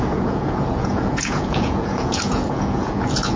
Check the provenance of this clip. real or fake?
fake